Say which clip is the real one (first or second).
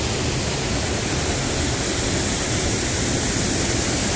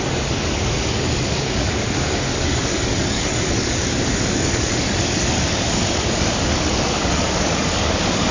first